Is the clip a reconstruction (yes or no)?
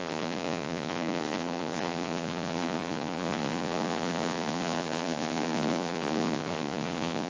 yes